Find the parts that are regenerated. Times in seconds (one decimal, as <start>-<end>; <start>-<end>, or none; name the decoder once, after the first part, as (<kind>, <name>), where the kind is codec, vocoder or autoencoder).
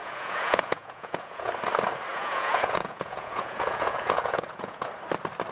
0.0-1.5 (vocoder, Vocos); 2.1-4.9